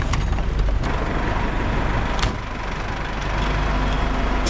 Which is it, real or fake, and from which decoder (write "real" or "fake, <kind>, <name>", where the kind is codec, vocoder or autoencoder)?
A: real